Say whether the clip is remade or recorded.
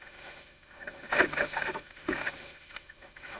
remade